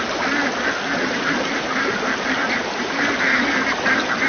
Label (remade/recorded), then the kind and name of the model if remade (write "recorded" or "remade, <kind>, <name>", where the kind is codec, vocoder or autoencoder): recorded